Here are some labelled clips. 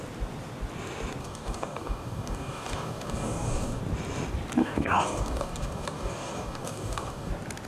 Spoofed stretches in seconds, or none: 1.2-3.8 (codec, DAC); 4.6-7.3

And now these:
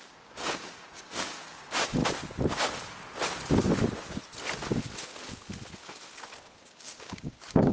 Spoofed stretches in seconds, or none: 0.0-2.0 (codec, DAC); 6.5-7.7

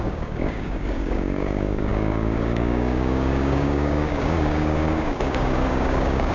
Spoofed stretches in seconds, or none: 0.0-6.3 (codec, DAC)